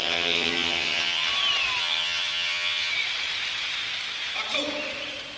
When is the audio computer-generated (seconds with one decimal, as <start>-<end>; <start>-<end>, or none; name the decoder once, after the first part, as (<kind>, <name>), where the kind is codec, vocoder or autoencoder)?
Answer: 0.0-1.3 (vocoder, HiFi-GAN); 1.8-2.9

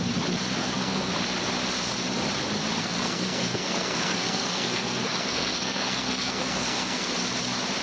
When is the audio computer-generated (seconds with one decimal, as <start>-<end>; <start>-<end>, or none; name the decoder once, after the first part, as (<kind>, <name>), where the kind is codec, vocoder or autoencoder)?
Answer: 0.6-1.1 (codec, SNAC); 2.8-7.1

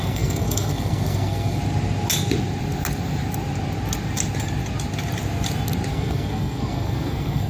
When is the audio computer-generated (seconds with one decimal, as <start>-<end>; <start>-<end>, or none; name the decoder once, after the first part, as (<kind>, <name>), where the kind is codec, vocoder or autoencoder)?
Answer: 0.0-1.6 (codec, SNAC); 5.9-7.5